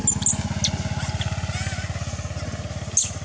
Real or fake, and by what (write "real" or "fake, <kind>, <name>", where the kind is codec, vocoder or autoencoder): real